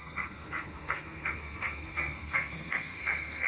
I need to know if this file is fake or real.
fake